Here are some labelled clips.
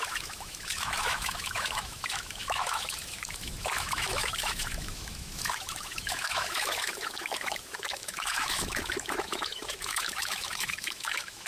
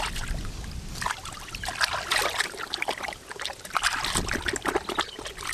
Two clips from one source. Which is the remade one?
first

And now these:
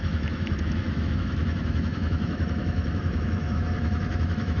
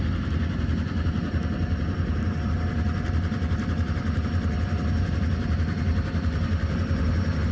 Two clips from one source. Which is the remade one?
first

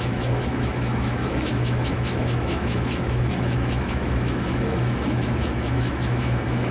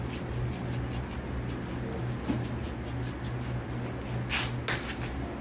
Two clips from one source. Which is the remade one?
first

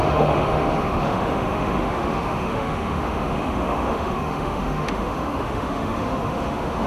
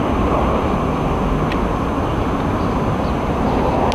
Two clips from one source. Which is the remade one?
first